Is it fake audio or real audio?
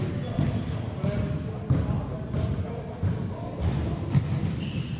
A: real